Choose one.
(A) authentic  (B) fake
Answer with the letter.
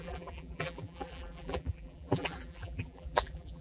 B